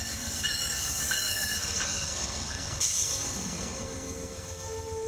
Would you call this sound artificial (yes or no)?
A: yes